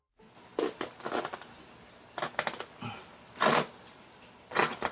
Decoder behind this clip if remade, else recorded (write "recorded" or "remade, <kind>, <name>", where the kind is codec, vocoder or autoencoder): recorded